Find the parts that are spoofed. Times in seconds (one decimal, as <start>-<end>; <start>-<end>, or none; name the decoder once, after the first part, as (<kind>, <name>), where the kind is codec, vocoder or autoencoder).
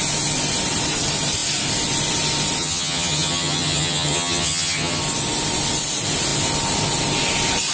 2.6-5.0 (vocoder, HiFi-GAN)